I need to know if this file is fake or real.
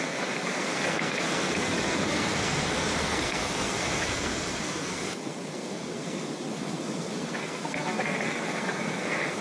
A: fake